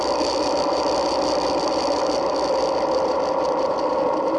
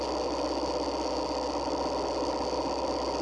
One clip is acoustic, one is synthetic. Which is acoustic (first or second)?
second